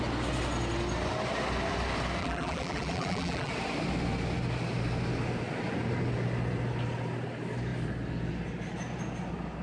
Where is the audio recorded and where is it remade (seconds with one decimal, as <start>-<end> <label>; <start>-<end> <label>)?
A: 0.0-2.2 recorded; 2.2-3.5 remade; 3.5-9.6 recorded